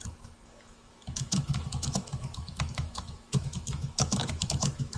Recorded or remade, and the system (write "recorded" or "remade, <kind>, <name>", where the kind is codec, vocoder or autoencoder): remade, autoencoder, DAC-VAE